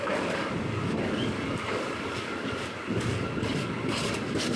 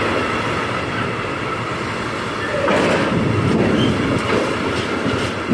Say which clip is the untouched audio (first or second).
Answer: second